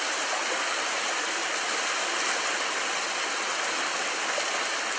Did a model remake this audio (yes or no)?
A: no